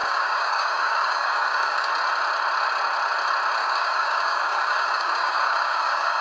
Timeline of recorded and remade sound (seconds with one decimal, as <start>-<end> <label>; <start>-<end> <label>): 0.0-1.9 remade; 1.9-3.6 recorded; 3.6-6.2 remade